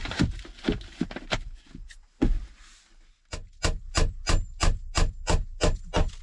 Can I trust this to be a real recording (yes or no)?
yes